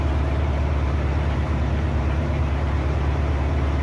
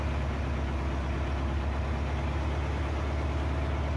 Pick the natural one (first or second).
second